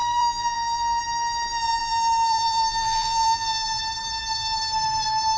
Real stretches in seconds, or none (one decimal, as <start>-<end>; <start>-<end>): 1.0-1.8; 3.8-5.4